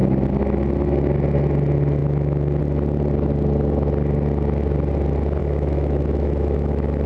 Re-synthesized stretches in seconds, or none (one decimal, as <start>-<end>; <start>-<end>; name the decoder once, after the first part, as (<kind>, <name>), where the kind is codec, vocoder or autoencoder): 2.0-2.6 (autoencoder, DAC-VAE); 5.4-7.1